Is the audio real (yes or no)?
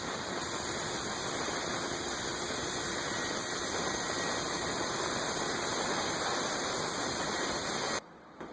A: no